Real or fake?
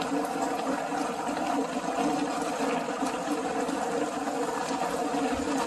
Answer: real